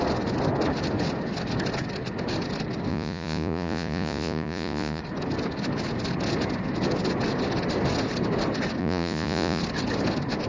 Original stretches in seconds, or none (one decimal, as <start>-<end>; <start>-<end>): 0.0-2.9; 5.0-8.8; 9.6-10.5